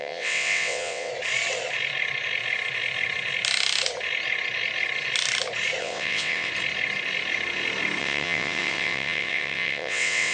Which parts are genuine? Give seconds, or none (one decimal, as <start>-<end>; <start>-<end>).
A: 1.1-5.8; 6.5-8.0